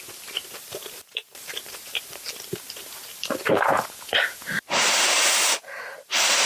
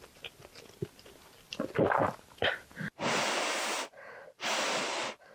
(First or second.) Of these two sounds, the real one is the second